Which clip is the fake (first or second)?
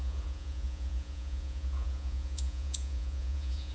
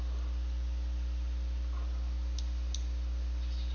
first